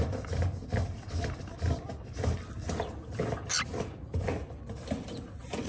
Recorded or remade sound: recorded